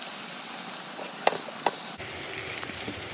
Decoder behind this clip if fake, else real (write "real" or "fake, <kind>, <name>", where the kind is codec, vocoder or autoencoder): real